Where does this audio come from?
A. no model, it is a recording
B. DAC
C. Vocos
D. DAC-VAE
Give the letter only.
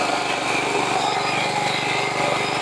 A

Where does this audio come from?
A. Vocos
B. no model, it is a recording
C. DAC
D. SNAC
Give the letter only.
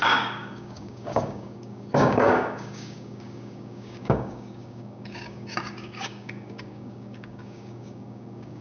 C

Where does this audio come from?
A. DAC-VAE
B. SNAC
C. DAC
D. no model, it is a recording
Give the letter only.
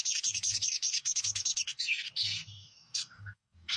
C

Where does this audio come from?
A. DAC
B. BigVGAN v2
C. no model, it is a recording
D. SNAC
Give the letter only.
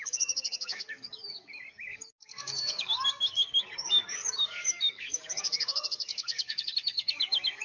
A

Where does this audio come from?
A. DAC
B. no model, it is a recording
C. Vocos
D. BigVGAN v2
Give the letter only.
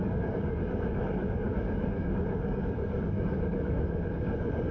A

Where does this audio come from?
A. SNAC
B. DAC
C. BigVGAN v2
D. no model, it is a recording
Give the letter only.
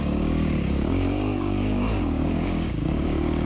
B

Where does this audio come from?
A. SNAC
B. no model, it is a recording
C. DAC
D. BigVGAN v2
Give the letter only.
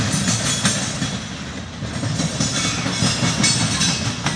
B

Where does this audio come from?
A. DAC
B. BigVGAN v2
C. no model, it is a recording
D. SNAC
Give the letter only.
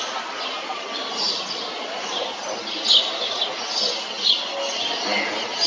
C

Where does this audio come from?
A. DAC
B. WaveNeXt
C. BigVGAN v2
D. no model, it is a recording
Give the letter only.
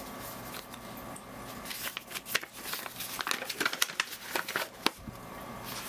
D